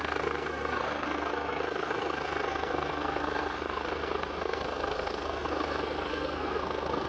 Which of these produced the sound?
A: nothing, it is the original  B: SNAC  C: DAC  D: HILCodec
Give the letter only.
B